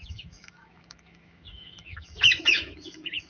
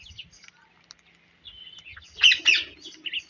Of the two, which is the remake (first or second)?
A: first